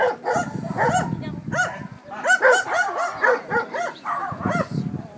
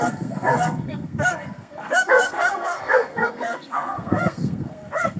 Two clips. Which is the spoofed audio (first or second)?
second